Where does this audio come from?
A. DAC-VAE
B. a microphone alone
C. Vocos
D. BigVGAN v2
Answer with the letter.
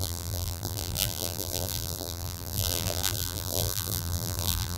D